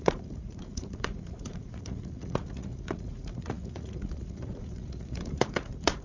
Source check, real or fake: fake